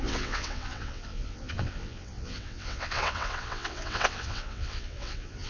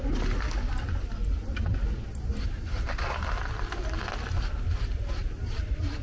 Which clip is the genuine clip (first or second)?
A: second